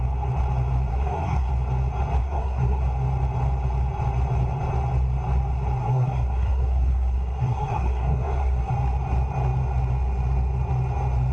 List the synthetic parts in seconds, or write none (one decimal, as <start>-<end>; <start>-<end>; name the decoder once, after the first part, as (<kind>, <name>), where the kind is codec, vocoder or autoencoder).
0.9-1.5 (codec, SNAC); 2.2-2.8; 5.8-8.7